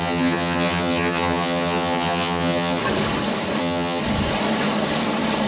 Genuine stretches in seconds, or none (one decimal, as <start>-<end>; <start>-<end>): 2.8-3.6; 4.0-5.5